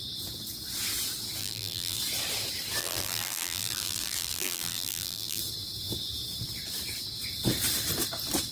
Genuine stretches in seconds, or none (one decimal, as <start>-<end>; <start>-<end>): 0.0-1.4; 2.0-2.8; 5.4-8.5